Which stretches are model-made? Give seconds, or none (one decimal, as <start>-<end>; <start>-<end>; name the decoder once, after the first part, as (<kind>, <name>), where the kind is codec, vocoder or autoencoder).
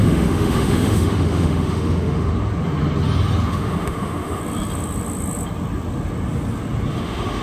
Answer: 0.0-2.3 (autoencoder, DAC-VAE); 3.5-4.4; 6.9-7.4